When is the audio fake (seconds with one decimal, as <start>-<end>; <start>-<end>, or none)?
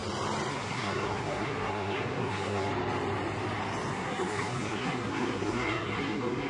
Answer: 0.5-2.7; 3.9-6.5